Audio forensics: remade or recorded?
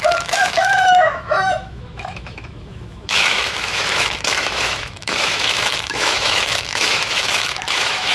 remade